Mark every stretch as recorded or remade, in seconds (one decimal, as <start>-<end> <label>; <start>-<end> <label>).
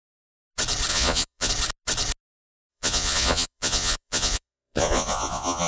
0.0-0.9 recorded; 0.9-1.5 remade; 1.5-2.7 recorded; 2.7-5.7 remade